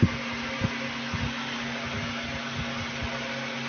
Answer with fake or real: real